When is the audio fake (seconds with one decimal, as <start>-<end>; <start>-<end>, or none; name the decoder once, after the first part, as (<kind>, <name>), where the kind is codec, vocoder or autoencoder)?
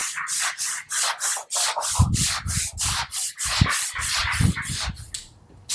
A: none